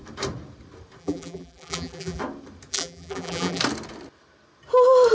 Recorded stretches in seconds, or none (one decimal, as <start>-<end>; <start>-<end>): 0.0-1.0; 2.2-2.7; 3.6-5.1